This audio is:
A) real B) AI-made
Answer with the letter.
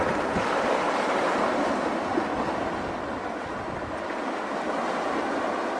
A